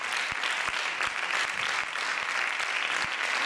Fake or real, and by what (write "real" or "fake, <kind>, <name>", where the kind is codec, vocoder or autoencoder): real